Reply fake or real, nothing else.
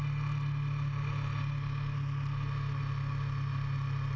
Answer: real